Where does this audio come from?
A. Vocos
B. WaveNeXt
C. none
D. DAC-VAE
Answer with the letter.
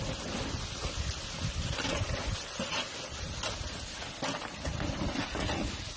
C